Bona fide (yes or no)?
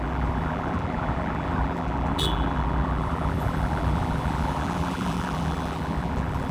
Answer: no